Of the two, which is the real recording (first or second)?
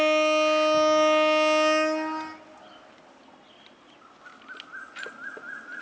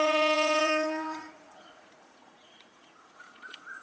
first